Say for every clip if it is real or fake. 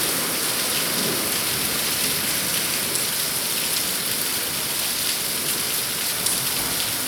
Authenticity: real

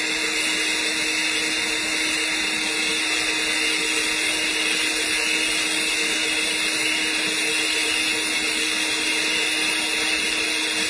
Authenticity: real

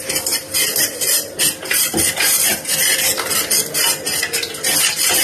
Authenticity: real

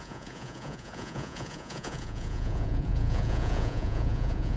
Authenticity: fake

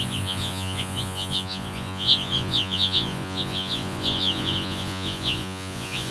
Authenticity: fake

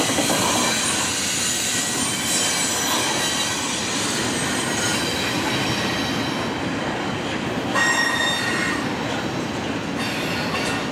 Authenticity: real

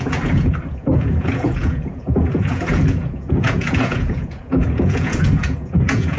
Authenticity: fake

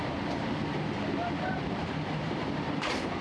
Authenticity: fake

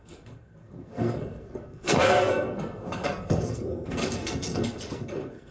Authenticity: fake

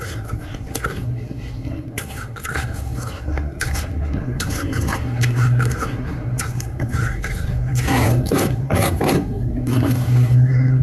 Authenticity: fake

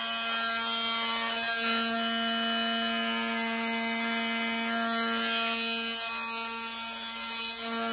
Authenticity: real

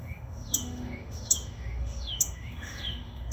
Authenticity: fake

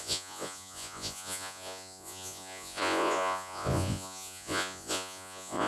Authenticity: fake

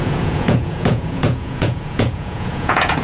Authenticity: fake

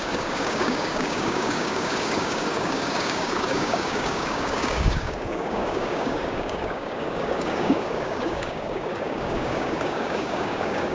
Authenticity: fake